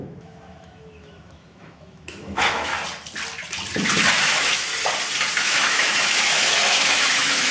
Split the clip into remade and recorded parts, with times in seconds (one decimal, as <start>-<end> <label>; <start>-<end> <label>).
0.0-2.7 remade; 2.7-4.2 recorded; 4.2-4.7 remade; 4.7-5.4 recorded; 5.4-7.5 remade